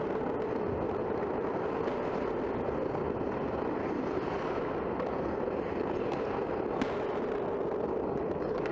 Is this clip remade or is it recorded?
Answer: recorded